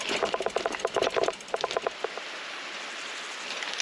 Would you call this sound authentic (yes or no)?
yes